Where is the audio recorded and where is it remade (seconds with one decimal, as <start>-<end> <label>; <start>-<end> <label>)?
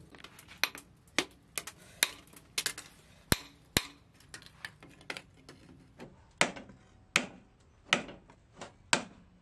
0.0-9.4 recorded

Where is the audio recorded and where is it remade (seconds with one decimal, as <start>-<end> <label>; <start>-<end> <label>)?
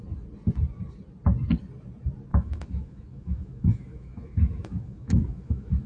0.0-2.3 recorded; 2.3-5.9 remade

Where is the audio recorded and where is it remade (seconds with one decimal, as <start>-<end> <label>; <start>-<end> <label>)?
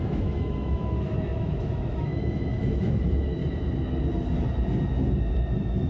0.0-3.4 remade; 3.4-5.5 recorded; 5.5-5.9 remade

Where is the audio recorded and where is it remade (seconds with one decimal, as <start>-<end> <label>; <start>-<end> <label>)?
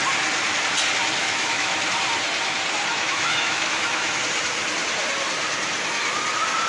0.0-1.2 recorded; 1.2-1.9 remade; 1.9-2.9 recorded; 2.9-4.2 remade; 4.2-6.7 recorded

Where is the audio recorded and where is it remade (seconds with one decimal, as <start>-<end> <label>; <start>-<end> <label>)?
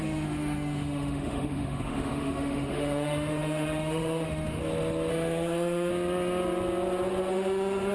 0.0-4.6 remade; 4.6-5.1 recorded; 5.1-5.9 remade; 5.9-7.3 recorded; 7.3-7.9 remade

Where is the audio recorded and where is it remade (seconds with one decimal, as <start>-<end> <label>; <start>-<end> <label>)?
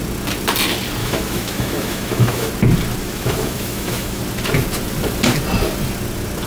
0.0-1.0 recorded; 1.0-2.5 remade; 2.5-3.0 recorded; 3.0-4.2 remade; 4.2-6.5 recorded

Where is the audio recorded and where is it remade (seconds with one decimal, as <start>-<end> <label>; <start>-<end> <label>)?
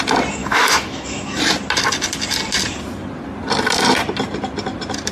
0.0-0.4 recorded; 0.4-1.4 remade; 1.4-5.1 recorded